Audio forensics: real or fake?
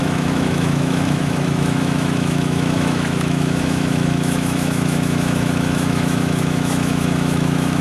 fake